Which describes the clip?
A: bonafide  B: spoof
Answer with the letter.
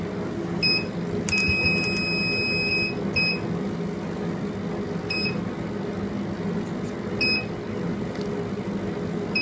A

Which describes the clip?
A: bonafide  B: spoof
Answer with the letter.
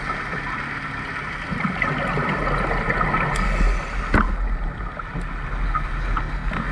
A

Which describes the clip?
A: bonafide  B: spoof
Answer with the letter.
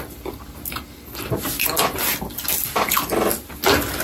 A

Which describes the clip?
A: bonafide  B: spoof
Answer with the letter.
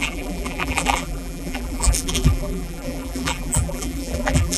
B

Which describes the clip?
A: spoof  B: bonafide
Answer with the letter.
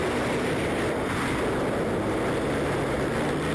B